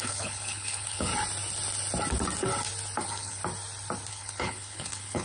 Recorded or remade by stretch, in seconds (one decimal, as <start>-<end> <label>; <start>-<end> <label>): 0.0-1.1 remade; 1.1-3.0 recorded; 3.0-3.4 remade; 3.4-4.1 recorded; 4.1-5.2 remade